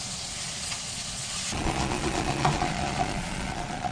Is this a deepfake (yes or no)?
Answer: yes